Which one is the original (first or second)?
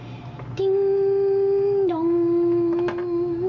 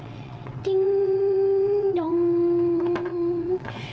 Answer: first